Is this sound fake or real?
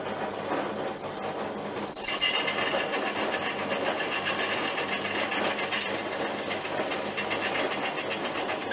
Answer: real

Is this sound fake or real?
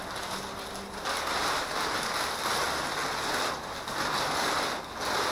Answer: real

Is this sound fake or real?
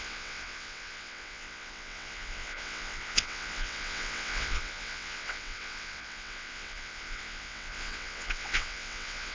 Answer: fake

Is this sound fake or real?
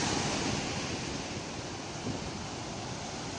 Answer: real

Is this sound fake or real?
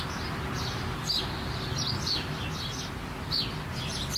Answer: real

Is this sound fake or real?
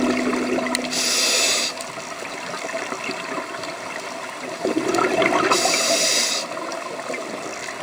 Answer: real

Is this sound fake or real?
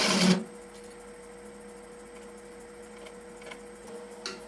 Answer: real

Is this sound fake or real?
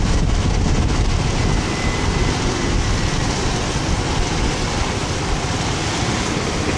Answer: real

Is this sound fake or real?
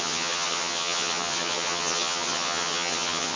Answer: fake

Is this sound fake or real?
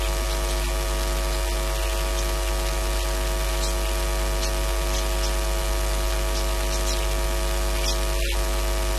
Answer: real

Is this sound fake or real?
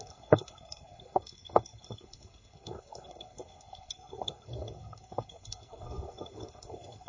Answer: fake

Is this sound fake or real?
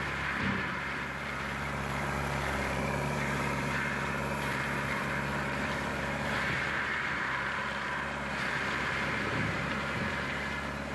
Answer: fake